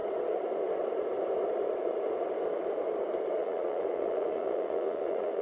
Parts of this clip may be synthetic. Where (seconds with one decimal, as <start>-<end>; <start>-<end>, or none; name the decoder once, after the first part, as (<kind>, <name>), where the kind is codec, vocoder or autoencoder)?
3.4-5.4 (vocoder, Vocos)

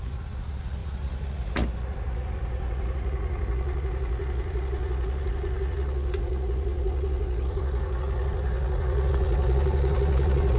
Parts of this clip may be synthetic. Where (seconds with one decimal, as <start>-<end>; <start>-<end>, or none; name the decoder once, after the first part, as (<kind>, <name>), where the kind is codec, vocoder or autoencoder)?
0.0-10.6 (vocoder, Vocos)

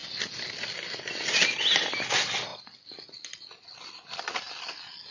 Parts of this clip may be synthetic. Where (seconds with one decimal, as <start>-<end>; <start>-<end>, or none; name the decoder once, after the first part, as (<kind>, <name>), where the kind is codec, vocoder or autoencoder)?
none

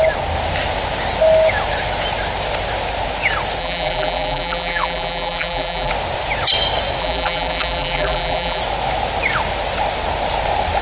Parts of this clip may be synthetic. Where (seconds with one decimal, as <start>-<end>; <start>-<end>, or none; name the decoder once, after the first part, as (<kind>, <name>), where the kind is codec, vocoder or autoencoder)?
3.6-5.9 (vocoder, BigVGAN v2); 7.0-8.6

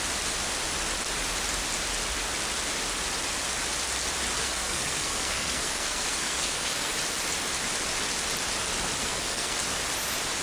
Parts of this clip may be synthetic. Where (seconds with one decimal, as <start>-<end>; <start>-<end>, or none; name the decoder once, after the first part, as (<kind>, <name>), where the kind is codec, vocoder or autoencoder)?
4.4-6.9 (codec, SNAC); 9.0-9.6

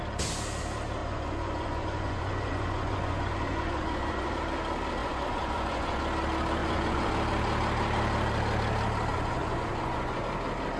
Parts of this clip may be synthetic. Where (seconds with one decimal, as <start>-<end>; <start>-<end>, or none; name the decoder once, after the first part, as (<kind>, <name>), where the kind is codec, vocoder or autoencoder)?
1.0-4.3 (vocoder, Vocos); 5.0-6.0; 6.6-7.1; 9.1-10.2

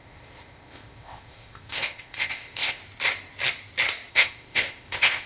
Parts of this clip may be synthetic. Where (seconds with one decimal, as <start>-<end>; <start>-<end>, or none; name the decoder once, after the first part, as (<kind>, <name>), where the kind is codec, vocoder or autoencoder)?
0.0-2.8 (codec, ZipCodec); 4.1-5.3

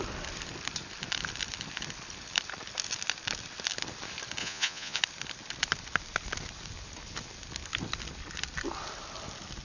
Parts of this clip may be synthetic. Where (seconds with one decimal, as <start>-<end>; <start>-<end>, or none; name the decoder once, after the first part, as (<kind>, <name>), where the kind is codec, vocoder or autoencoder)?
4.4-5.0 (vocoder, Vocos)